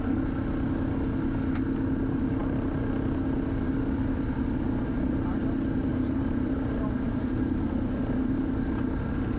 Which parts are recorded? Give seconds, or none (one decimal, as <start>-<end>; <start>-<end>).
0.0-5.9; 7.6-9.4